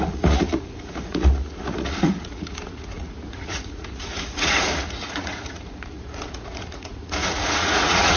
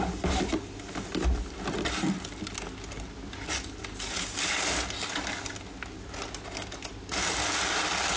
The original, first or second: second